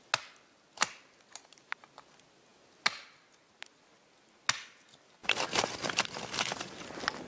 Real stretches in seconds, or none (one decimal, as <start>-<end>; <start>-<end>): 0.0-7.3